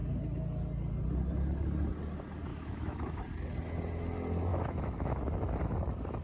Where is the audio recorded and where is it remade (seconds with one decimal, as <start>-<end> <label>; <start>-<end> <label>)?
0.0-2.5 recorded; 2.5-3.2 remade; 3.2-4.5 recorded; 4.5-5.2 remade; 5.2-6.2 recorded